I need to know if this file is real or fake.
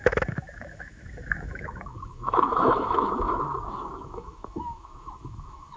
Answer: fake